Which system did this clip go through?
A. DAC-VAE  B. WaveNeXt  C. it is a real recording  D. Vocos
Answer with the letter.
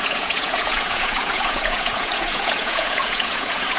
D